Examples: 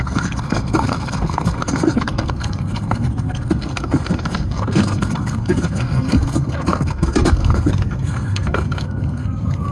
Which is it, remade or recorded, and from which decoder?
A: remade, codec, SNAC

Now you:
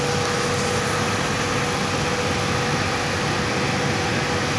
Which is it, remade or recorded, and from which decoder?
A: recorded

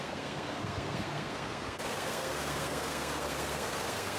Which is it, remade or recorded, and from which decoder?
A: remade, codec, SNAC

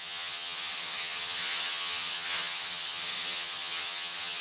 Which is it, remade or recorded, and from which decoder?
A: remade, vocoder, HiFi-GAN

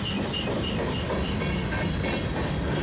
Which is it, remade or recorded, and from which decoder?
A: recorded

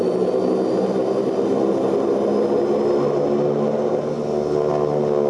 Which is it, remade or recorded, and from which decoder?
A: recorded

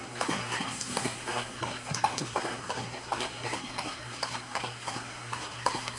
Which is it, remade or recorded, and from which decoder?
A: remade, codec, SNAC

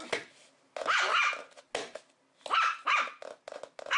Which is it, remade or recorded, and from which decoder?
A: recorded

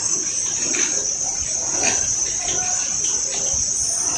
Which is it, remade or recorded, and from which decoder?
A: recorded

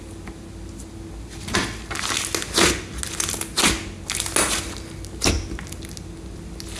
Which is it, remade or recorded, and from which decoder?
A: recorded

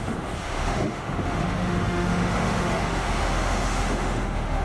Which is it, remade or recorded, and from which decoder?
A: remade, autoencoder, DAC-VAE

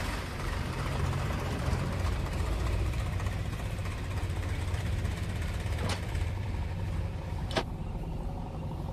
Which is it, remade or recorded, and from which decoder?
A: remade, vocoder, BigVGAN v2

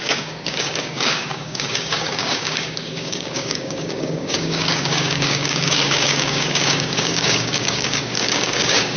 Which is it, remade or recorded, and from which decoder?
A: remade, codec, DAC